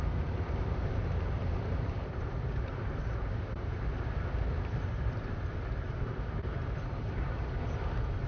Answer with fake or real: fake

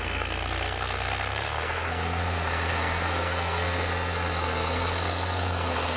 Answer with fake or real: fake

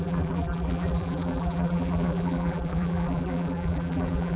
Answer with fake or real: fake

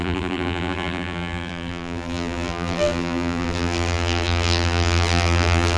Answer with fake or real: fake